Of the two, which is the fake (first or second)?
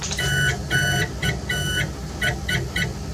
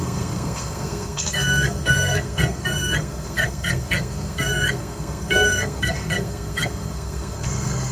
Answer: second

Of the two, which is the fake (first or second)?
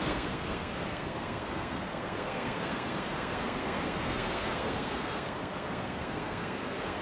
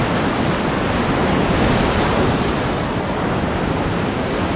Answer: first